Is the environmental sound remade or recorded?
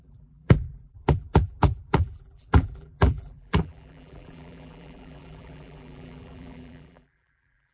remade